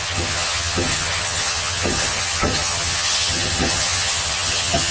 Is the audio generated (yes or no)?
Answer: yes